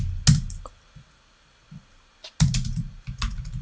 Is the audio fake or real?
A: real